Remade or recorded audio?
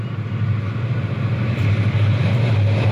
recorded